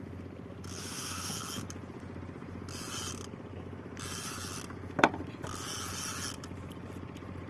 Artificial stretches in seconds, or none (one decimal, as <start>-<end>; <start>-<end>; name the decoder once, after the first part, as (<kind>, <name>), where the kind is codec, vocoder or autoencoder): 0.8-1.3 (autoencoder, DAC-VAE)